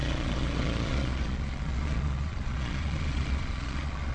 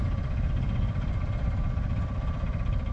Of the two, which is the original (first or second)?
second